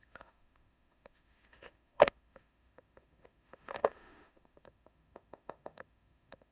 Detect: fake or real fake